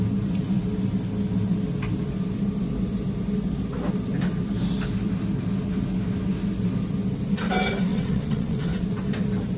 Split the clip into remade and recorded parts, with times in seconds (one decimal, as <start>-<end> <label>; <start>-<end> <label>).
0.0-7.9 recorded; 7.9-8.8 remade; 8.8-9.6 recorded